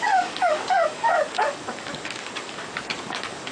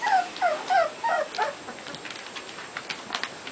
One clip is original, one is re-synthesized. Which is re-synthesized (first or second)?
first